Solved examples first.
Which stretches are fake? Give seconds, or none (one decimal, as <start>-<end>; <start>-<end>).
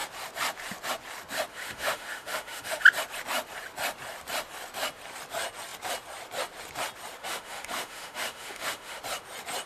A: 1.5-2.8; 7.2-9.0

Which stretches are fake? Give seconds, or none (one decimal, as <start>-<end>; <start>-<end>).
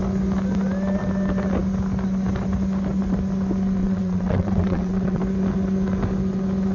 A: 3.8-5.2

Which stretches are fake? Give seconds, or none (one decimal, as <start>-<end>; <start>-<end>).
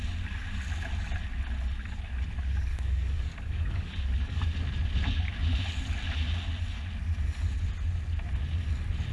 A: 2.7-4.5